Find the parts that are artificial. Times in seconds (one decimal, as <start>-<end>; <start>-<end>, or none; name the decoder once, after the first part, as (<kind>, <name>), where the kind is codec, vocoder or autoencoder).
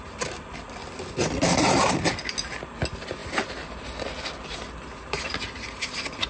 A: none